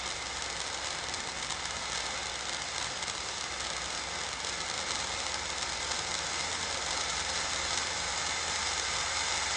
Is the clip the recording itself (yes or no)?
yes